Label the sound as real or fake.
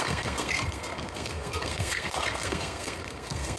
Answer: fake